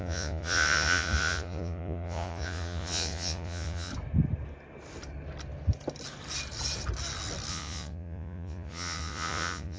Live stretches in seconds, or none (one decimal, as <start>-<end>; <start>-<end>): 3.9-7.5